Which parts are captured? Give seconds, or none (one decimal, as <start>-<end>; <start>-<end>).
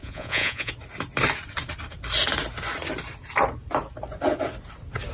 0.7-5.1